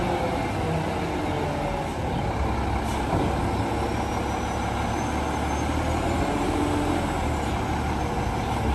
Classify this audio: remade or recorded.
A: recorded